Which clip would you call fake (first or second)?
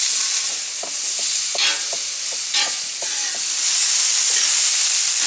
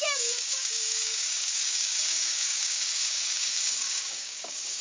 second